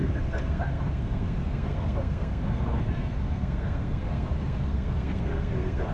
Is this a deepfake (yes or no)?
yes